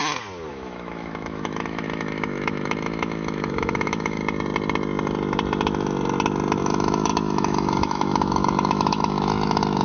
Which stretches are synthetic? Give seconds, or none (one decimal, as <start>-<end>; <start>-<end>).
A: 0.5-4.2; 6.6-9.8